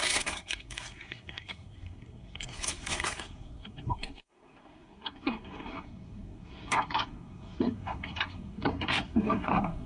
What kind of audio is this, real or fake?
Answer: fake